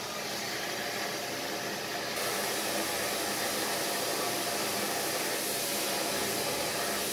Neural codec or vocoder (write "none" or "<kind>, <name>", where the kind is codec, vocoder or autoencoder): none